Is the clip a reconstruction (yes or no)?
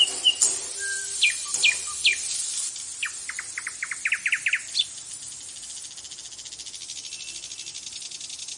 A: no